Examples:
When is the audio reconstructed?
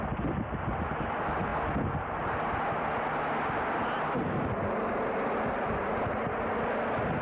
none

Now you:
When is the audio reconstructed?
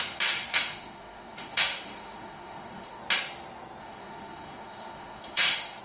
0.5-3.0 (autoencoder, DAC-VAE); 3.8-5.8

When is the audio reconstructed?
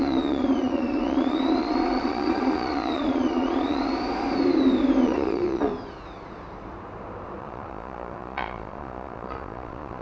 0.0-3.9 (vocoder, Vocos); 5.0-5.7; 7.4-10.0